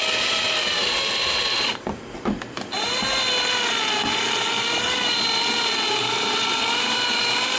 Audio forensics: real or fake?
real